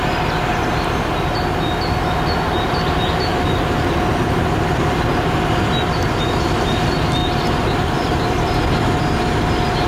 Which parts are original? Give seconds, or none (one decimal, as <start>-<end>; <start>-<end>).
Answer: 0.0-7.2; 9.2-9.9